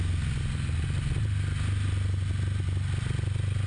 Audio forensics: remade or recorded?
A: recorded